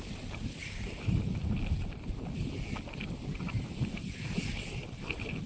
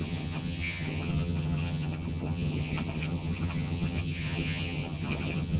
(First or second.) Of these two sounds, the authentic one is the first